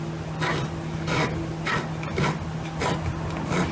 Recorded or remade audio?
recorded